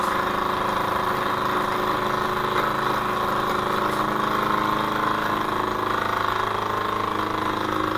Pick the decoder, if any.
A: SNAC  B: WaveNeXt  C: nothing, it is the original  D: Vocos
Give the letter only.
C